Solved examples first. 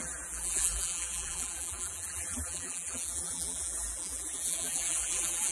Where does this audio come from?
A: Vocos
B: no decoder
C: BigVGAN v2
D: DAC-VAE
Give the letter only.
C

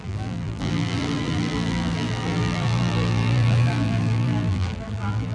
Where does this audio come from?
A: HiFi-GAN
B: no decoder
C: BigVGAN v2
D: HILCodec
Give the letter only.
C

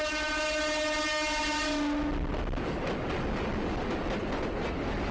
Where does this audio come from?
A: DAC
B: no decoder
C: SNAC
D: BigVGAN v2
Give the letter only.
B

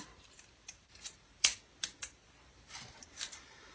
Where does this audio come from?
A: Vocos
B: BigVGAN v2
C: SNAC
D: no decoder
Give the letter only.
B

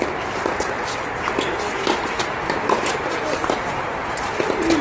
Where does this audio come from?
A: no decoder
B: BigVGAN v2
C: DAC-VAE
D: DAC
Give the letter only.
A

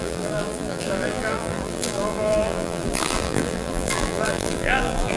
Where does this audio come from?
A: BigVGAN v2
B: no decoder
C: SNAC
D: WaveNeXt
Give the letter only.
A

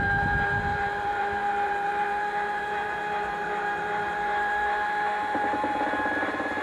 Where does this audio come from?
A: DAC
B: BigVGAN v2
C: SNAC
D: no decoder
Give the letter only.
B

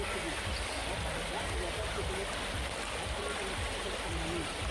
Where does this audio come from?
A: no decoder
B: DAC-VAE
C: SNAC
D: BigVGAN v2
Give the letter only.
A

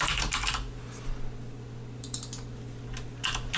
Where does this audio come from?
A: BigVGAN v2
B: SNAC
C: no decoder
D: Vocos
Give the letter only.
C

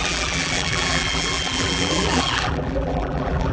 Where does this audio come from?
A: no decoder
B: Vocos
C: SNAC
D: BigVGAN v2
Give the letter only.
D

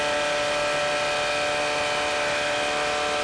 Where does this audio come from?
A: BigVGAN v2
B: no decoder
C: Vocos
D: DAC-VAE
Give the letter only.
B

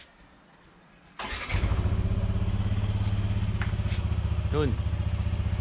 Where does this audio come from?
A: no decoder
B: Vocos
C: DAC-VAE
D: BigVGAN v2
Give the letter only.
A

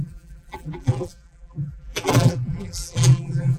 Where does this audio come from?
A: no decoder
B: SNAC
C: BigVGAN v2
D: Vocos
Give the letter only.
C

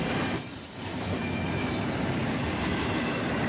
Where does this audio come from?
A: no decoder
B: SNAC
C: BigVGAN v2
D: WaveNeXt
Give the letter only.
C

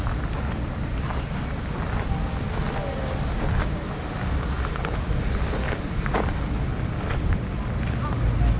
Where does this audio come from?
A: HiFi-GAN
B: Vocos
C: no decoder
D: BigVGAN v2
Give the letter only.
C